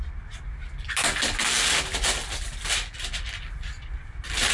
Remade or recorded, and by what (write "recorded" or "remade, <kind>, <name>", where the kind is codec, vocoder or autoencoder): recorded